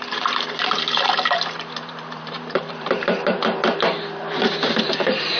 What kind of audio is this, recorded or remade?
remade